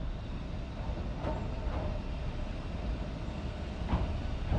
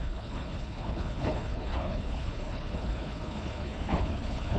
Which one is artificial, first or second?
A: second